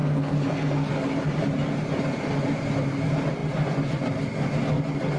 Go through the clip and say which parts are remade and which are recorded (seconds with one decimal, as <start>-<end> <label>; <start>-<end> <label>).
0.0-0.9 remade; 0.9-5.2 recorded